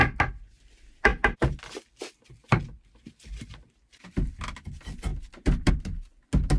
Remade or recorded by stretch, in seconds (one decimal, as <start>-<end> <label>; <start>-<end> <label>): 0.0-6.6 recorded